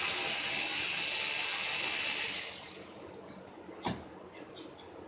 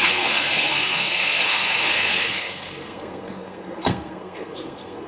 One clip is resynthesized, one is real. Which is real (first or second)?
first